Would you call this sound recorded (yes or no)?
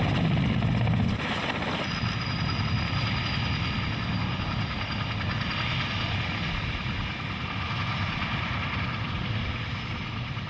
yes